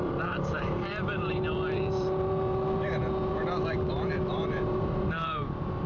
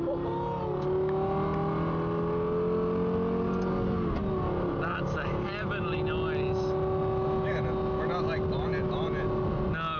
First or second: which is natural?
second